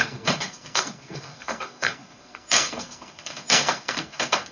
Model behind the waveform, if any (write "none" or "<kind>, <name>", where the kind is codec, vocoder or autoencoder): codec, SNAC